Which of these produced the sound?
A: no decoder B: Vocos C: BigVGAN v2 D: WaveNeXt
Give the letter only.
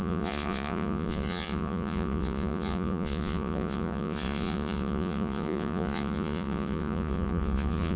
B